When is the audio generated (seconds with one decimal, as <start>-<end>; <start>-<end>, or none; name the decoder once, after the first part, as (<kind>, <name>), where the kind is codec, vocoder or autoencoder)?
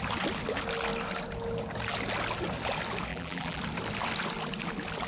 3.1-3.6 (vocoder, BigVGAN v2)